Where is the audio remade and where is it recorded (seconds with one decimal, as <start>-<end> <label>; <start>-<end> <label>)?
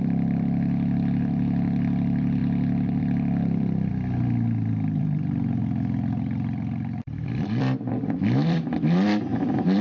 0.0-2.4 remade; 2.4-3.0 recorded; 3.0-3.9 remade; 3.9-5.0 recorded; 5.0-9.8 remade